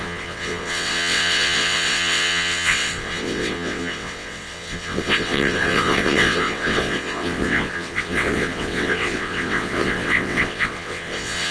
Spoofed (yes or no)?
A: yes